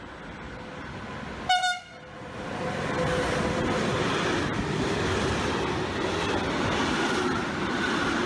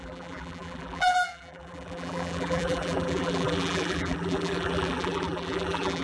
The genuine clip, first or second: first